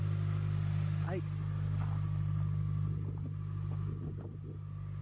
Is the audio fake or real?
real